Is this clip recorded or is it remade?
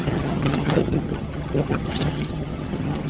remade